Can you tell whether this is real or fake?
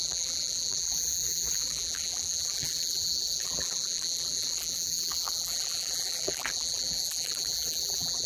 fake